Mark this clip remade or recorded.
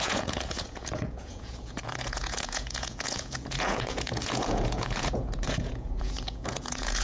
remade